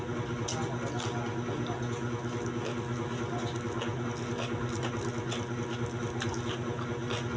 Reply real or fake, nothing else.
real